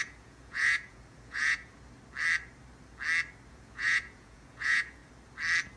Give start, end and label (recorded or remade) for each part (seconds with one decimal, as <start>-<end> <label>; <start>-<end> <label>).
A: 0.0-1.7 remade; 1.7-3.5 recorded; 3.5-5.0 remade; 5.0-5.8 recorded